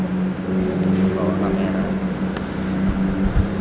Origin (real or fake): real